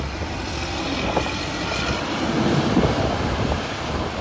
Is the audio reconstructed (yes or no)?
no